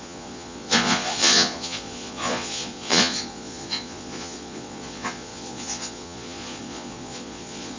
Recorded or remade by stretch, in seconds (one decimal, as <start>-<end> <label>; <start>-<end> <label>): 0.0-7.8 remade